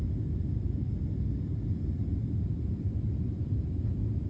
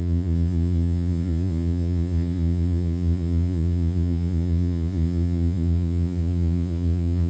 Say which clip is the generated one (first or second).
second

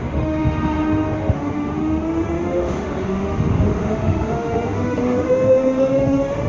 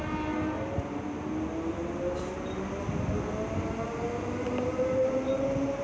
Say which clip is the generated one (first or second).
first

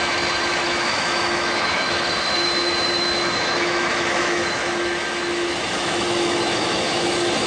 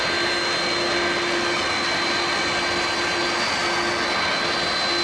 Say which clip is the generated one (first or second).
first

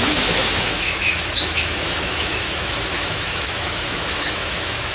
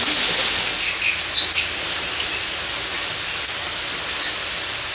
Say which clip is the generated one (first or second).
first